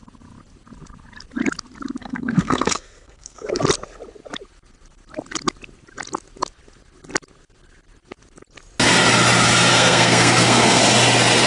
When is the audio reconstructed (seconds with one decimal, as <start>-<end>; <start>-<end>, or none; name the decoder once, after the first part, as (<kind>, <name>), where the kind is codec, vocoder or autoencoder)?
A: 2.0-3.6 (codec, SNAC); 9.7-10.8